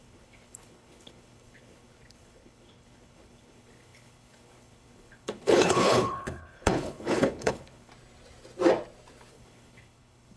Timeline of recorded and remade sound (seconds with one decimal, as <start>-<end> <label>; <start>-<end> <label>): 0.0-7.9 remade; 7.9-9.3 recorded; 9.3-10.4 remade

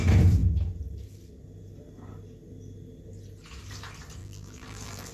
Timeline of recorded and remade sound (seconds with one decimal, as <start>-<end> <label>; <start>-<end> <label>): 0.0-4.2 recorded; 4.2-5.1 remade

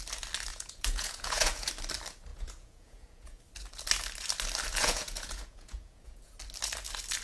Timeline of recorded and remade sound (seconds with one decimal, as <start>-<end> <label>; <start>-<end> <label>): 0.0-0.5 recorded; 0.5-1.7 remade; 1.7-2.3 recorded; 2.3-3.4 remade; 3.4-4.8 recorded; 4.8-6.4 remade; 6.4-7.2 recorded

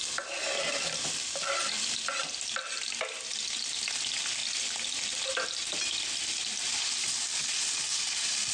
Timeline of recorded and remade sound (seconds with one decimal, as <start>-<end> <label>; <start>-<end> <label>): 0.0-8.5 recorded

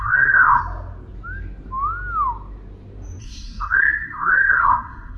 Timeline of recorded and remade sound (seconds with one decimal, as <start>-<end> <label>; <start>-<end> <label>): 0.0-0.6 remade; 0.6-3.2 recorded; 3.2-5.2 remade